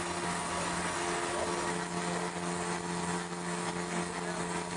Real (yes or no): yes